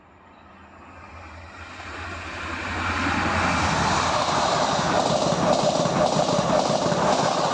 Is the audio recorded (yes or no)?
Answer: yes